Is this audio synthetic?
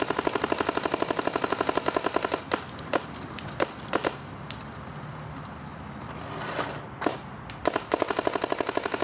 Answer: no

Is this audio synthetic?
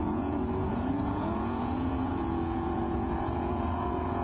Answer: yes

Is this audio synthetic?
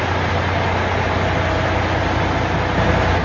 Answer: no